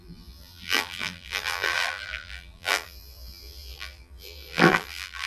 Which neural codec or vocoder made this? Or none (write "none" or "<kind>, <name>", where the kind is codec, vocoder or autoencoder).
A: vocoder, BigVGAN v2